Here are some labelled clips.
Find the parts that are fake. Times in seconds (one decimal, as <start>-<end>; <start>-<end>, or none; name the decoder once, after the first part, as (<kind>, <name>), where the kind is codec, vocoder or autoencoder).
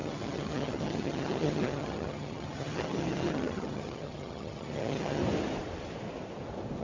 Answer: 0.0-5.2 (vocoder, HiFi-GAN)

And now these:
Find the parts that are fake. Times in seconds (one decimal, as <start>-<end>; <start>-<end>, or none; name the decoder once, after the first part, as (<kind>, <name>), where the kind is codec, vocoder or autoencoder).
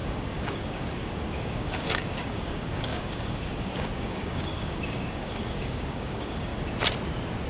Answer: 0.0-6.5 (codec, DAC)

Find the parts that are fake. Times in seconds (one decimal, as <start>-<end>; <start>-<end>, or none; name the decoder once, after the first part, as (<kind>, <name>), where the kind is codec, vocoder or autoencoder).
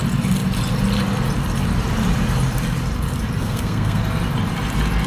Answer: 3.4-4.0 (codec, SNAC)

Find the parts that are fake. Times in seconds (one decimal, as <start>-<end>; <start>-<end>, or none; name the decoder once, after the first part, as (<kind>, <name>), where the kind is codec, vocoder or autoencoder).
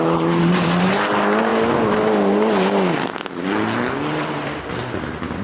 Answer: none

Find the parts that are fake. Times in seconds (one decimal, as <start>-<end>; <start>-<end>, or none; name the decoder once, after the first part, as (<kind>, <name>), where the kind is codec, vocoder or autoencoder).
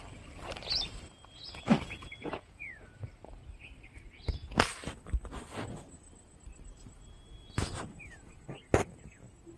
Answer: 2.2-3.1 (vocoder, Vocos)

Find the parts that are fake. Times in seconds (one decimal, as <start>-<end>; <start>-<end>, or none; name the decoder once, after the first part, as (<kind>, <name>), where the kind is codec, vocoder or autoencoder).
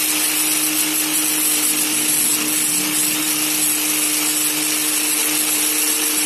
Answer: none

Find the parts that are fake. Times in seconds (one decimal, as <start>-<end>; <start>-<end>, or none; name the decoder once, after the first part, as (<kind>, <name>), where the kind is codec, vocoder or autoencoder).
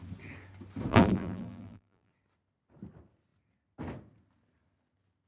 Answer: 0.9-2.1 (vocoder, BigVGAN v2)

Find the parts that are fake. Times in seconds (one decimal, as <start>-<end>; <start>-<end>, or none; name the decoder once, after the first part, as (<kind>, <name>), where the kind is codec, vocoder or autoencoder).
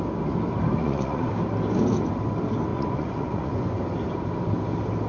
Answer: 0.8-1.3 (vocoder, Vocos); 2.7-3.8